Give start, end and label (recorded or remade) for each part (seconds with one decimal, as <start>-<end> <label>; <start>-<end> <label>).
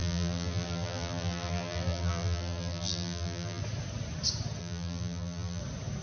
0.0-3.6 remade; 3.6-4.6 recorded; 4.6-5.6 remade; 5.6-6.0 recorded